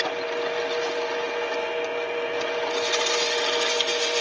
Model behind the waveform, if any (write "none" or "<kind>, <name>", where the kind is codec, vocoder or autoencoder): none